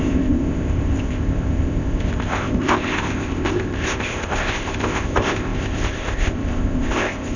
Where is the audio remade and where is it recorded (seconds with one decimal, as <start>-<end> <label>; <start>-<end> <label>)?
0.0-7.4 remade